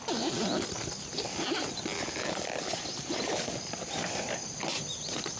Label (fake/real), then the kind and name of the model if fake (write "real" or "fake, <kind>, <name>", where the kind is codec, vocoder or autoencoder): real